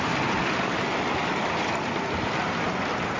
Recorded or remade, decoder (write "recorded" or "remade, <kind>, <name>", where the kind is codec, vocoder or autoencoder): recorded